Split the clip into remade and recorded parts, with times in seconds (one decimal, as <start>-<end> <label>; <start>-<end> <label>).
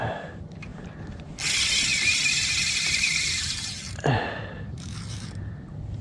0.0-0.7 recorded; 0.7-1.2 remade; 1.2-1.9 recorded; 1.9-5.5 remade; 5.5-6.0 recorded